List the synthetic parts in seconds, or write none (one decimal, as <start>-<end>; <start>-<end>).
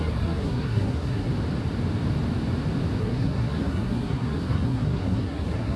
0.0-1.3; 3.0-5.8